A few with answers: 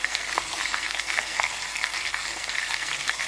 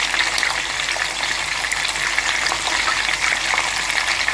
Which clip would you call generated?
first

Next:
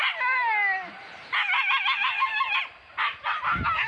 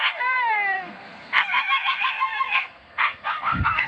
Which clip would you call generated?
second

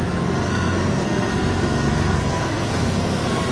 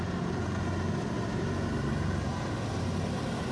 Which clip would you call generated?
first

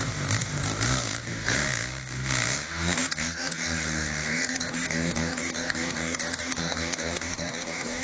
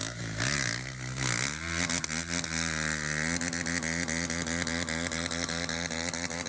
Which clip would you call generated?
first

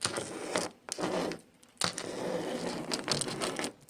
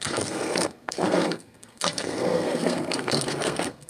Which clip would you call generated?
second